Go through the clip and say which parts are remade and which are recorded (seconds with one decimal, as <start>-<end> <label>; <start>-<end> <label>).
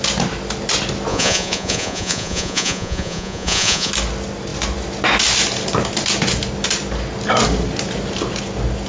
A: 0.0-1.1 recorded; 1.1-3.9 remade; 3.9-8.9 recorded